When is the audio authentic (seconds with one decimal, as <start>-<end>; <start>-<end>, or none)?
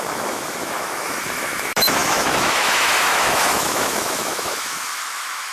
none